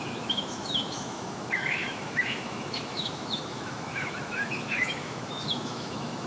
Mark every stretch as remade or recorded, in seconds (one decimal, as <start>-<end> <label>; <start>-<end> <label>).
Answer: 0.0-6.3 remade